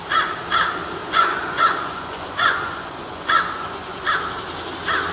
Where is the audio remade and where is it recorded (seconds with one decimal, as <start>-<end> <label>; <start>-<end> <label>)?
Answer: 0.0-1.0 recorded; 1.0-4.1 remade; 4.1-5.1 recorded